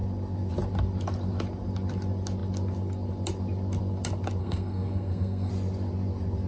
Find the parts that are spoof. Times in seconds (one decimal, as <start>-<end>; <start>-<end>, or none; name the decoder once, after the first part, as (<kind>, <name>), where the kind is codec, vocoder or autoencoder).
4.4-5.5 (codec, SNAC)